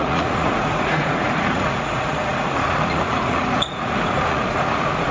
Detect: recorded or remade remade